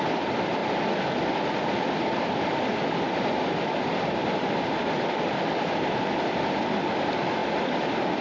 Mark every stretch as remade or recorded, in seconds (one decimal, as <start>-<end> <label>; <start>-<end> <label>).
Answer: 0.0-0.6 remade; 0.6-1.7 recorded; 1.7-7.4 remade; 7.4-8.2 recorded